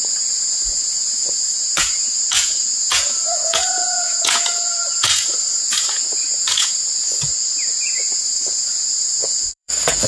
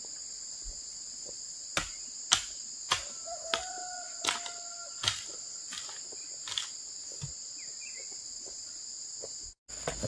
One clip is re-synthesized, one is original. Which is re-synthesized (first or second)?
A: first